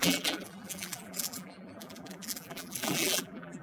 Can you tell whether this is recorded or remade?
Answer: remade